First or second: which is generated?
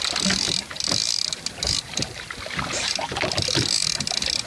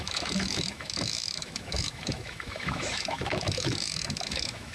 second